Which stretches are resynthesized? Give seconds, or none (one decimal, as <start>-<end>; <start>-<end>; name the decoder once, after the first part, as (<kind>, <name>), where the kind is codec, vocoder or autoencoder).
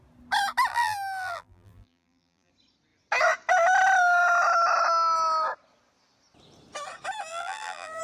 0.7-2.5 (vocoder, BigVGAN v2); 7.3-8.0